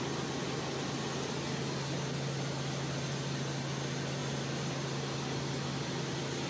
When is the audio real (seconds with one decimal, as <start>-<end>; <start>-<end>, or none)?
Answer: 0.0-6.5